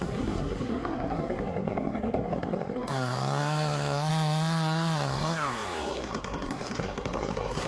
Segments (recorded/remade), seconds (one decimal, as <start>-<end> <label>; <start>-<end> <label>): 0.0-7.7 remade